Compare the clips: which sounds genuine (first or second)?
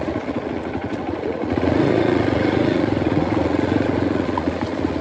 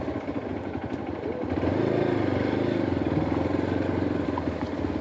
second